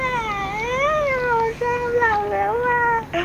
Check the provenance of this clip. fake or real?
real